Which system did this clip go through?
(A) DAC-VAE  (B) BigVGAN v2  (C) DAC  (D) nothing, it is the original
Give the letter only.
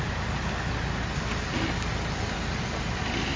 D